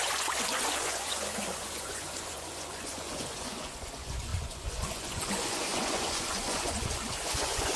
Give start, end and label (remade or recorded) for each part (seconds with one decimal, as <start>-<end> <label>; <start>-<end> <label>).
0.0-7.8 remade